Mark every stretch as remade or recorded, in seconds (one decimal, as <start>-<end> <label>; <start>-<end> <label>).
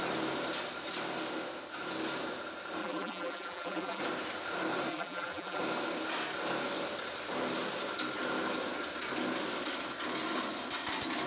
0.0-2.8 recorded; 2.8-4.0 remade; 4.0-4.9 recorded; 4.9-5.6 remade; 5.6-11.3 recorded